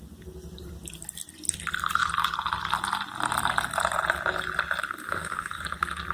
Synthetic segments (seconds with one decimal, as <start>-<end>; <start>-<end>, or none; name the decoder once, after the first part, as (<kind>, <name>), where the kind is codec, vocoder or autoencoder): 5.0-5.6 (autoencoder, DAC-VAE)